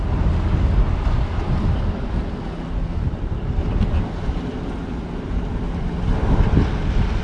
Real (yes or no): yes